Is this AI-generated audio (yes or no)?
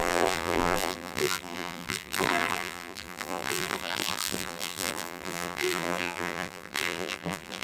yes